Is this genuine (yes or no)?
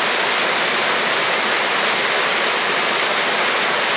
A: yes